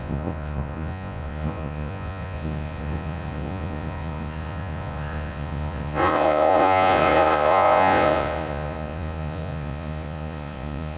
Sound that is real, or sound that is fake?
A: fake